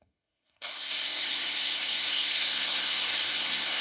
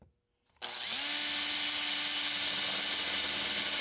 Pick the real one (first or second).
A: second